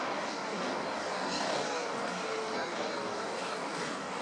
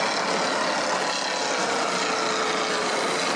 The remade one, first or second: first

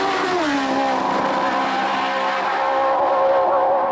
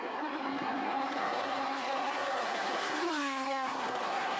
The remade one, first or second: second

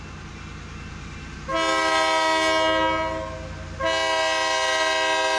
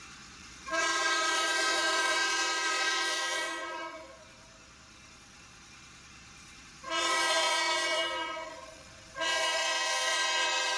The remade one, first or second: second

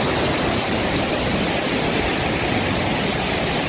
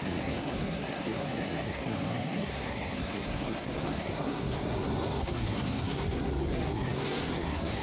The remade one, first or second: second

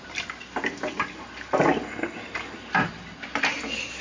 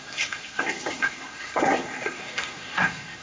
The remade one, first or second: second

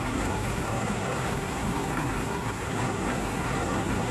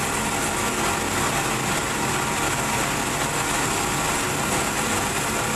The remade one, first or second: first